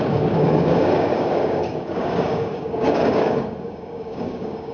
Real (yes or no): no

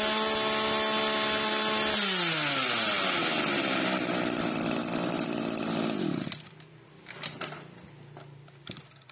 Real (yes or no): yes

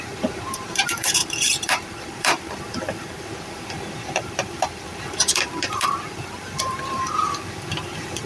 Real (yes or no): no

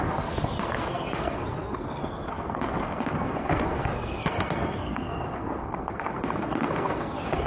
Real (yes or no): no